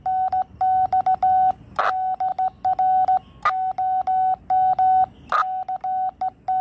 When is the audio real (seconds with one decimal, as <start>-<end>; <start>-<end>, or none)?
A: 0.0-6.6